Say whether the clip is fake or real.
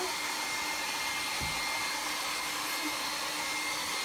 real